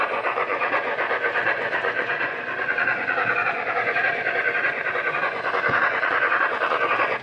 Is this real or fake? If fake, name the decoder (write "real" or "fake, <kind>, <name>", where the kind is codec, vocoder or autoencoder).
fake, vocoder, Vocos